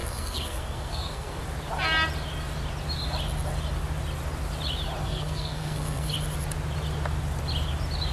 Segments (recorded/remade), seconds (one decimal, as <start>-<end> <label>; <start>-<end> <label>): 0.0-1.4 remade; 1.4-5.0 recorded; 5.0-6.1 remade; 6.1-8.1 recorded